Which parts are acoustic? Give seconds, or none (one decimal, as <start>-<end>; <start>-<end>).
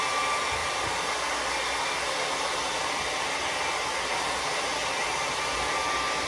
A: 0.0-6.3